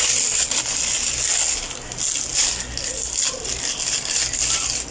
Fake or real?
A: real